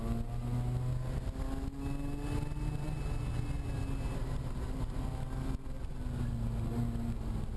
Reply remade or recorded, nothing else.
recorded